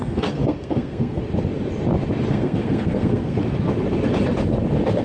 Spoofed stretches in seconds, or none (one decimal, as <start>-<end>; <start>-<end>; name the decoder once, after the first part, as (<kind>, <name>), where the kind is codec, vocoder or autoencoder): 0.0-1.2 (codec, SNAC); 2.3-3.4